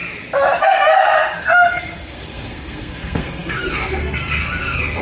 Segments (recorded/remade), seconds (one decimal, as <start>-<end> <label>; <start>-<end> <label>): 0.0-0.6 recorded; 0.6-5.0 remade